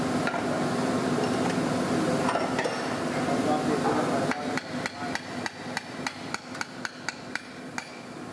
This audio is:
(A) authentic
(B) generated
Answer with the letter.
A